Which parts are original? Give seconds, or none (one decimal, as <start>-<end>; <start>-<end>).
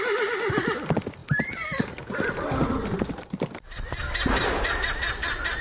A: 0.0-5.6